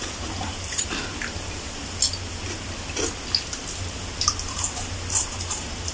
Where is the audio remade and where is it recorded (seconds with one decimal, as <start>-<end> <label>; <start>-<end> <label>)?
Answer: 0.0-1.0 remade; 1.0-4.5 recorded; 4.5-5.9 remade